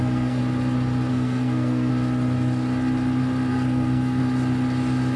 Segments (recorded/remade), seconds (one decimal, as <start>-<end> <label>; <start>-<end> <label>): 0.0-0.4 remade; 0.4-1.1 recorded; 1.1-1.9 remade; 1.9-3.5 recorded; 3.5-4.2 remade; 4.2-5.2 recorded